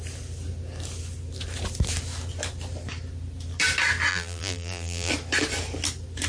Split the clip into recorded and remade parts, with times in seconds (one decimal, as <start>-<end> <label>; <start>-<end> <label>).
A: 0.0-4.1 recorded; 4.1-5.1 remade; 5.1-6.3 recorded